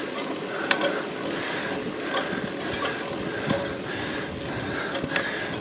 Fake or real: real